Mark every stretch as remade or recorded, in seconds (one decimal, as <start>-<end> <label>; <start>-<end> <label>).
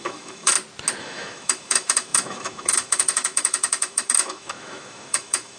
0.0-0.5 remade; 0.5-1.0 recorded; 1.0-5.6 remade